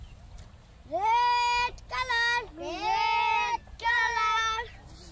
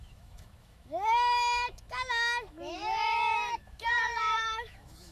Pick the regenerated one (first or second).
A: second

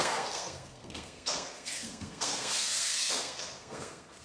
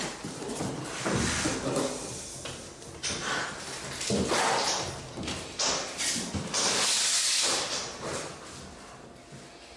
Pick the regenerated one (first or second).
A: first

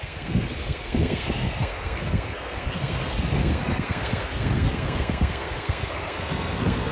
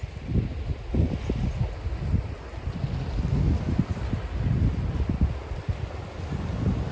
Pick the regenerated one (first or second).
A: first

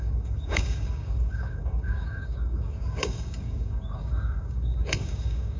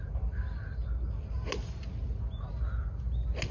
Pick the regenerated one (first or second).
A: first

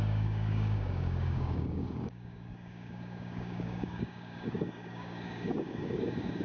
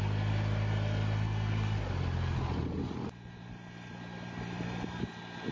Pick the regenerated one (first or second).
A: first